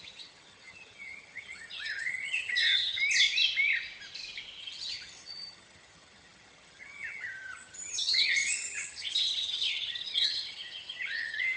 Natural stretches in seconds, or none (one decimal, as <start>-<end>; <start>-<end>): 3.0-4.6

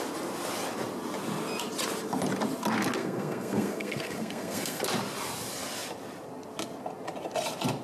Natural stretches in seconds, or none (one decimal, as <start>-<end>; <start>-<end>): 0.0-3.0; 4.8-7.8